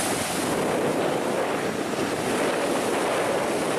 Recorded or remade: recorded